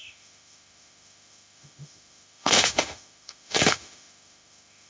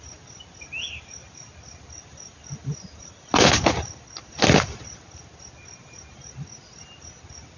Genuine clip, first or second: second